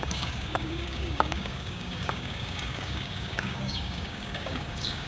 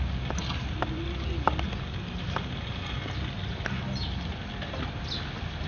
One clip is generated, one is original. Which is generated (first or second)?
first